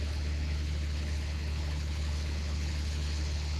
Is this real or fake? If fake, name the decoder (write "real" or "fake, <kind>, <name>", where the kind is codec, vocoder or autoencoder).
fake, codec, HILCodec